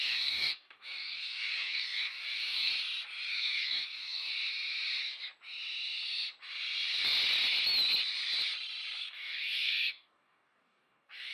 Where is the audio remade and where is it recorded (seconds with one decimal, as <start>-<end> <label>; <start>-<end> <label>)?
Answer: 0.0-2.7 remade; 2.7-3.3 recorded; 3.3-4.3 remade; 4.3-9.0 recorded; 9.0-11.3 remade